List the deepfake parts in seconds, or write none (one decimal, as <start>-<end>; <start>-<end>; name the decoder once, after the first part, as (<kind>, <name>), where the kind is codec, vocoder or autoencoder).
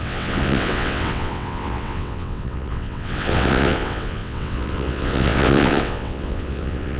0.0-7.0 (vocoder, WaveNeXt)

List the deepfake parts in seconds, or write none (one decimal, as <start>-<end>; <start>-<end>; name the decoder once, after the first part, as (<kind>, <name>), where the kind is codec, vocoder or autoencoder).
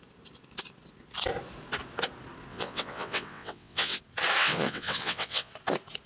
2.5-4.0 (vocoder, WaveNeXt); 4.4-5.5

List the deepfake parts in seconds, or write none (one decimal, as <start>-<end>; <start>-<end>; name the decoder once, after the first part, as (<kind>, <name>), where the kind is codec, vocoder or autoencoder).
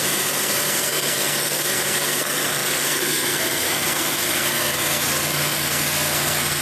0.0-6.6 (codec, SNAC)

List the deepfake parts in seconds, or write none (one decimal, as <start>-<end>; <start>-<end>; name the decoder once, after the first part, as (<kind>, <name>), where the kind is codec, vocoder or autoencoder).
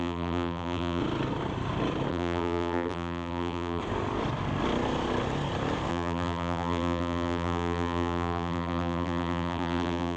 0.0-1.0 (vocoder, BigVGAN v2); 2.1-3.8; 5.9-10.2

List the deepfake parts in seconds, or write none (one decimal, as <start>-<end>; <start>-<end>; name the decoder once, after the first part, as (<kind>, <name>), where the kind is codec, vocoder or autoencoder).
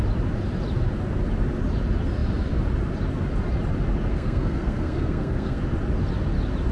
4.1-5.6 (codec, SNAC)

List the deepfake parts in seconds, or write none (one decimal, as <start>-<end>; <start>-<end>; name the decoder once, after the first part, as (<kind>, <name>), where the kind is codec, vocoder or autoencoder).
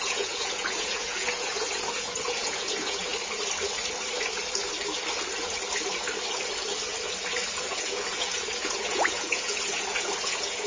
0.0-3.1 (vocoder, Vocos); 7.5-10.7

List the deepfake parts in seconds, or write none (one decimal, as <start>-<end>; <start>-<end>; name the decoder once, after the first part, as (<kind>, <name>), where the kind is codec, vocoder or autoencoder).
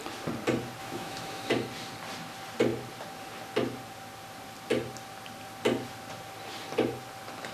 0.8-1.5 (autoencoder, DAC-VAE)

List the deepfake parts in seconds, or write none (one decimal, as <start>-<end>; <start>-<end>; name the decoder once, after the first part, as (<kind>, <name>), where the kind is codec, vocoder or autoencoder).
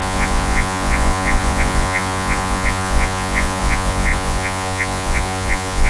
0.0-5.9 (vocoder, Vocos)